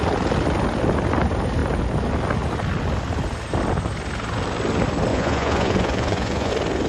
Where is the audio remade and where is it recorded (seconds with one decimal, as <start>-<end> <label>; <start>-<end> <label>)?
0.0-5.1 recorded; 5.1-6.5 remade; 6.5-6.9 recorded